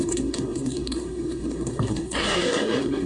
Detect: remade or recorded remade